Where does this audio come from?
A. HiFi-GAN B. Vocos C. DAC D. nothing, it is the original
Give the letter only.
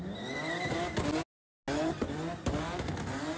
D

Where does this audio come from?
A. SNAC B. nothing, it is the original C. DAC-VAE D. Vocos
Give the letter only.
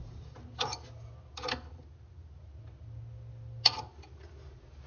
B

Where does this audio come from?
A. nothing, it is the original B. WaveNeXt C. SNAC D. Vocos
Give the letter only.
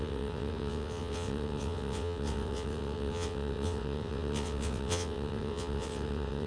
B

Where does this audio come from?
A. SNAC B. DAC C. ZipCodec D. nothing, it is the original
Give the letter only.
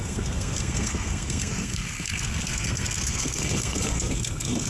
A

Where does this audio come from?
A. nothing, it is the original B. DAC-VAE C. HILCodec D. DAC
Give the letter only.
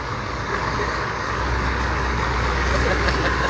D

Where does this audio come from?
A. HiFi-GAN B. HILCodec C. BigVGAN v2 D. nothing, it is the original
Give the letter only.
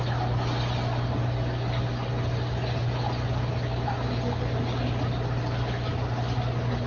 D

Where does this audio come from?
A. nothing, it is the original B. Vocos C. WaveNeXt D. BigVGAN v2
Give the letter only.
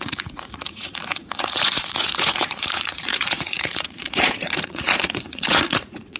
B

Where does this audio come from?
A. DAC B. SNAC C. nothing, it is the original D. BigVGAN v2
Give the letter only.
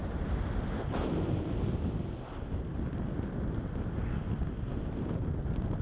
C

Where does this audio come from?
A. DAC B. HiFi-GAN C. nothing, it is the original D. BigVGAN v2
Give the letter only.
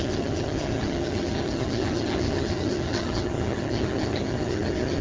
B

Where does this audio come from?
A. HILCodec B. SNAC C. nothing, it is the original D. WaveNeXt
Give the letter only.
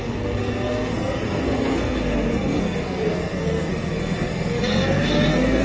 B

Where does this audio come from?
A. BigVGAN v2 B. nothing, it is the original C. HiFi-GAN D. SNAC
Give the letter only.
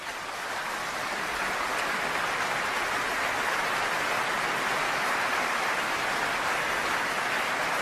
B